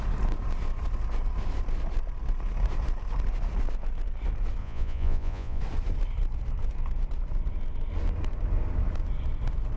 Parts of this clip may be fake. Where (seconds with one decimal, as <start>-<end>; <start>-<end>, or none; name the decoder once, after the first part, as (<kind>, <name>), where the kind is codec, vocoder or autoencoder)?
4.6-5.6 (vocoder, Vocos)